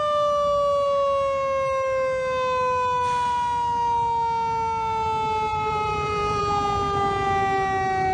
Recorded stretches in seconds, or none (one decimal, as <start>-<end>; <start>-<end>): 0.0-5.5; 6.4-8.1